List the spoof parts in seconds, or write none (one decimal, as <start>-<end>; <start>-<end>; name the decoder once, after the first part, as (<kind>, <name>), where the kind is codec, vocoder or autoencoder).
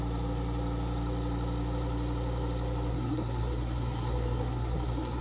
2.9-5.2 (codec, SNAC)